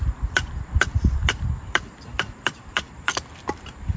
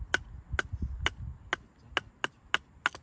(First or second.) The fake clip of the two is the first